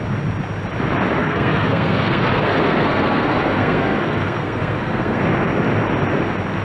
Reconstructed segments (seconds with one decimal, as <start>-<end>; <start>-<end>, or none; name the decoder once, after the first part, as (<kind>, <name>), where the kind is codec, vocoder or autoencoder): 1.2-5.2 (codec, SNAC)